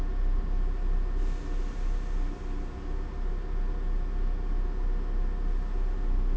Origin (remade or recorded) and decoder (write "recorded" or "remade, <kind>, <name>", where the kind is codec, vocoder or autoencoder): recorded